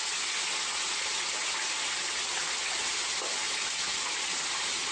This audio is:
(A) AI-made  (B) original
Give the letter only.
B